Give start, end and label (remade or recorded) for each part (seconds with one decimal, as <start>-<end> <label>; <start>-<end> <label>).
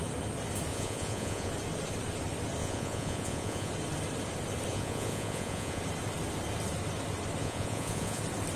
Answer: 0.0-0.7 recorded; 0.7-1.5 remade; 1.5-2.6 recorded; 2.6-3.7 remade; 3.7-4.7 recorded; 4.7-5.8 remade; 5.8-7.4 recorded; 7.4-8.2 remade; 8.2-8.6 recorded